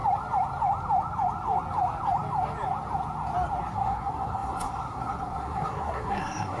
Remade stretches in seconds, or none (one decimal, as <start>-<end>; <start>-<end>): 3.7-6.6